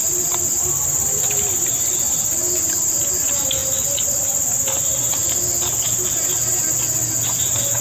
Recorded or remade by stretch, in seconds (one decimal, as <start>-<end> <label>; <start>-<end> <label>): 0.0-7.8 recorded